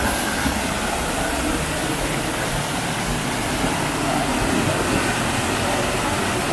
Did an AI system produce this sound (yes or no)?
no